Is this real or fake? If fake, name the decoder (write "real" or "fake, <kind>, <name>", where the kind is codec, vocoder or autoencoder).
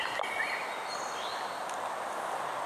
real